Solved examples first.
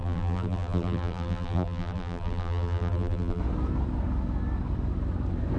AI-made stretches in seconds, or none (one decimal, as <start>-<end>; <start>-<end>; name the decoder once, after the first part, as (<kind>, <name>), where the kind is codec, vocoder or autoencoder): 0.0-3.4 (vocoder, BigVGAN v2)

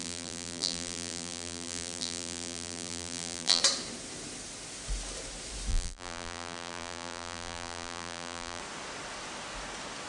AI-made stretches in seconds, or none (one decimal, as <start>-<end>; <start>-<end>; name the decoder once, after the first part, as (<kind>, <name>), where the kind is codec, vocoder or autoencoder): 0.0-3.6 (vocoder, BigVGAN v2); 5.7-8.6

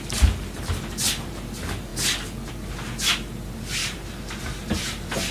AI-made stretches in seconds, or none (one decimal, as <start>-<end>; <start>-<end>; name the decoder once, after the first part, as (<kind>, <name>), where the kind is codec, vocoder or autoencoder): 3.8-4.4 (vocoder, BigVGAN v2)

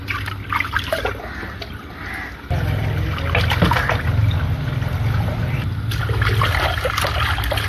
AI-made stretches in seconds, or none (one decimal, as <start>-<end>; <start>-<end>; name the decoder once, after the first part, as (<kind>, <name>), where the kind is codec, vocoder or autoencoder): none

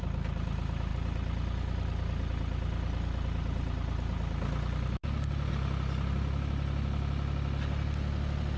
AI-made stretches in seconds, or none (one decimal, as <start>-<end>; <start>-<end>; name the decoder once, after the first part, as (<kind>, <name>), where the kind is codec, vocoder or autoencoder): none

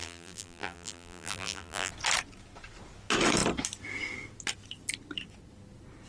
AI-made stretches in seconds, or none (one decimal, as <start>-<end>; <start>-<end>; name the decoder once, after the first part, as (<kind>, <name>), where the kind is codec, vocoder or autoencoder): 0.0-1.9 (vocoder, BigVGAN v2)